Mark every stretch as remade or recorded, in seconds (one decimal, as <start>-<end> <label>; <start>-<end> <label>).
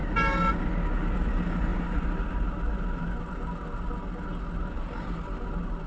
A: 0.0-1.7 recorded; 1.7-2.3 remade; 2.3-5.9 recorded